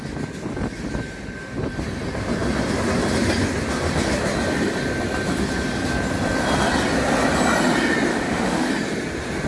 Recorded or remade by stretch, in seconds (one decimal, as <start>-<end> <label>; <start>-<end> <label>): 0.0-8.1 recorded; 8.1-8.7 remade; 8.7-9.5 recorded